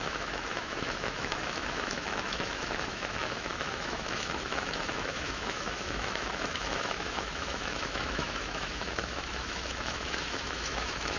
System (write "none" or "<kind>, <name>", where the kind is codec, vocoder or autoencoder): autoencoder, DAC-VAE